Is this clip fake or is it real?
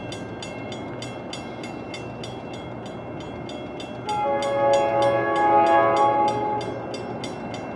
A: real